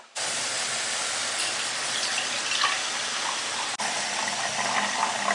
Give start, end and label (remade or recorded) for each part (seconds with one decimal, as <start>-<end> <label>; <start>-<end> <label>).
0.0-5.3 recorded